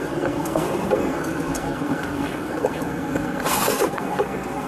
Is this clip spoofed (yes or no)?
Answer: yes